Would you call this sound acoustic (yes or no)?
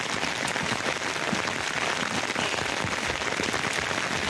yes